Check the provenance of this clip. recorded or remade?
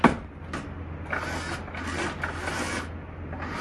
recorded